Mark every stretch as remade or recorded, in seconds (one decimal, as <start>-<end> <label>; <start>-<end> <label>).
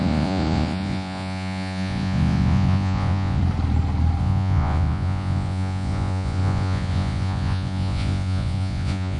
0.0-3.4 remade; 3.4-4.2 recorded; 4.2-9.2 remade